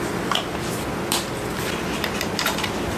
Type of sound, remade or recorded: recorded